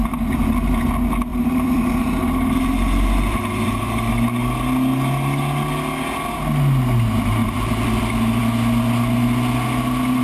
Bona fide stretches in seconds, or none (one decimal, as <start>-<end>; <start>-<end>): 0.0-1.3; 4.1-7.4; 8.0-10.2